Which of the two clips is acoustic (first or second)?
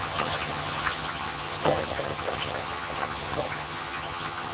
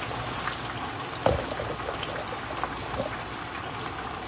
second